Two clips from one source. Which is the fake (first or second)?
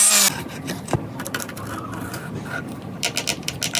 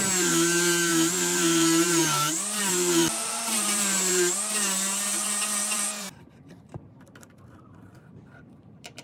second